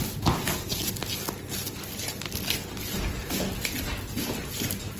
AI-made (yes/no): no